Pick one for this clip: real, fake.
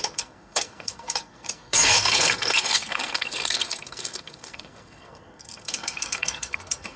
fake